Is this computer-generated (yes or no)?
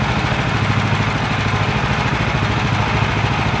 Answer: no